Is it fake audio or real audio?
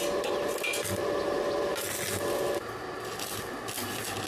real